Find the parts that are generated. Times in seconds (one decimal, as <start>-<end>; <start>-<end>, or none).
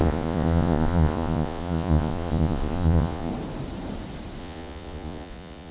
0.0-3.3; 4.4-5.7